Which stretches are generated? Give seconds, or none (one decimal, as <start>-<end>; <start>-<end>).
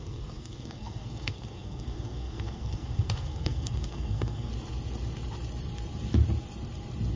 0.0-4.5